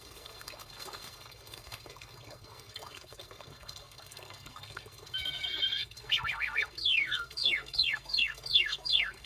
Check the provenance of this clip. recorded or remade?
remade